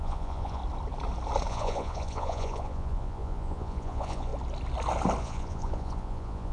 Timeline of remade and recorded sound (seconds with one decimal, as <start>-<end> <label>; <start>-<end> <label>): 0.0-0.6 remade; 0.6-1.5 recorded; 1.5-4.3 remade; 4.3-5.2 recorded; 5.2-6.5 remade